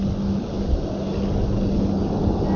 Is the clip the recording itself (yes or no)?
yes